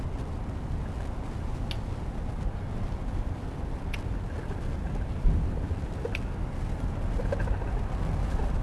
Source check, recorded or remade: recorded